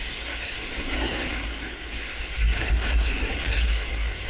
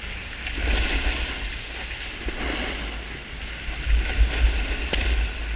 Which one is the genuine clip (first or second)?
second